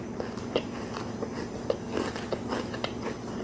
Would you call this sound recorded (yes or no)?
yes